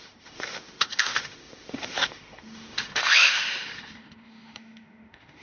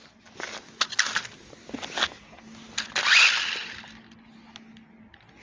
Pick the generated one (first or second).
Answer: first